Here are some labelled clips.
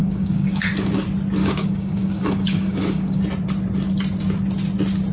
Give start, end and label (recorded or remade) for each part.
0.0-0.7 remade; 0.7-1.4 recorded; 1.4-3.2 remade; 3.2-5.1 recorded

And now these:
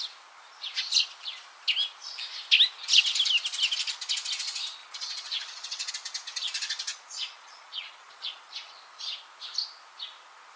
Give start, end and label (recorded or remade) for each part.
0.0-4.8 recorded; 4.8-5.9 remade; 5.9-6.9 recorded; 6.9-8.8 remade; 8.8-10.6 recorded

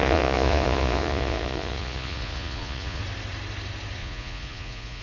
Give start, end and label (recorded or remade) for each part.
0.0-3.0 remade; 3.0-4.0 recorded; 4.0-5.0 remade

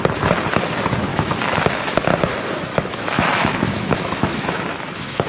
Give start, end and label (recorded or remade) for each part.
0.0-1.1 recorded; 1.1-1.6 remade; 1.6-2.7 recorded; 2.7-5.3 remade